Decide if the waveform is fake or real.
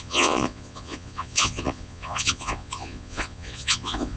fake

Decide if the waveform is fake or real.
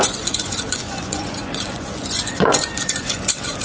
fake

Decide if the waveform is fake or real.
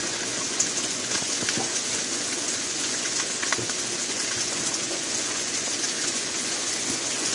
fake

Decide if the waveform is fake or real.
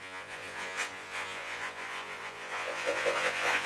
fake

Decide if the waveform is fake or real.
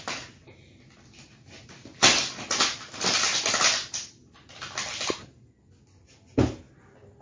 real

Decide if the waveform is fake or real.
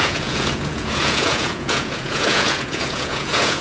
fake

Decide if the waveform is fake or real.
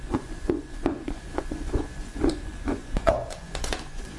fake